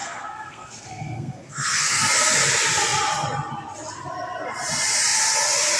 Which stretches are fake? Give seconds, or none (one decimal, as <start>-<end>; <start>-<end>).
0.0-2.0